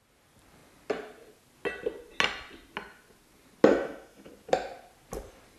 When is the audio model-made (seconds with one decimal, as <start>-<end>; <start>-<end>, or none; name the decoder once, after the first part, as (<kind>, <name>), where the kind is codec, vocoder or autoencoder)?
3.7-4.3 (autoencoder, DAC-VAE)